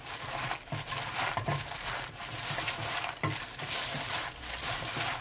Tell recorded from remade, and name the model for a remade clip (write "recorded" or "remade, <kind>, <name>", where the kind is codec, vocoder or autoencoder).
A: recorded